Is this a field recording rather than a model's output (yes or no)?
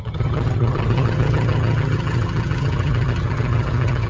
no